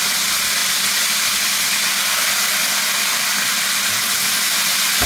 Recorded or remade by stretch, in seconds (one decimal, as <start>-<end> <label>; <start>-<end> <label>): 0.0-5.1 recorded